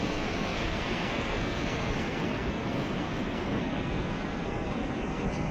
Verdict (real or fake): fake